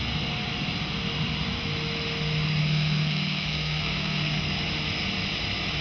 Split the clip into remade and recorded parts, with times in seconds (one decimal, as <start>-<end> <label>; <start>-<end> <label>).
0.0-2.6 recorded; 2.6-4.5 remade; 4.5-5.8 recorded